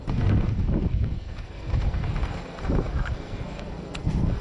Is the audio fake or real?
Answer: fake